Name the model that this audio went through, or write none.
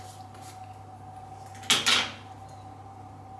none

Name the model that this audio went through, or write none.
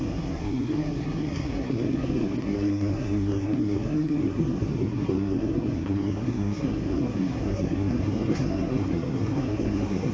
codec, SNAC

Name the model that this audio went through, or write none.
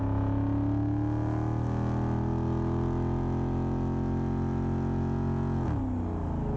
none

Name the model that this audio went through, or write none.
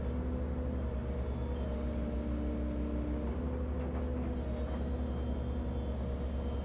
none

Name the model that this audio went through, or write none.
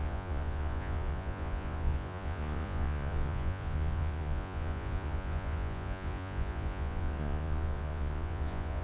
vocoder, Vocos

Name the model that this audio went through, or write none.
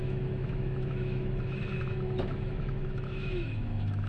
autoencoder, DAC-VAE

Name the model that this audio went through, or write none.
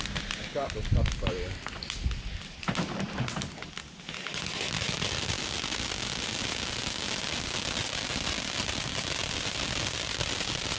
none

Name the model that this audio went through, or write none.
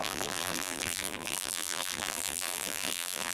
vocoder, BigVGAN v2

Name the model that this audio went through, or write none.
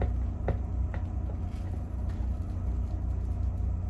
none